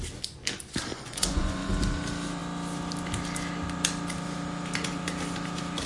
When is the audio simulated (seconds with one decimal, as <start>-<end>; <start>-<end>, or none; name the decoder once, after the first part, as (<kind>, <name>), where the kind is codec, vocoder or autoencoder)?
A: 0.9-1.7 (vocoder, Vocos)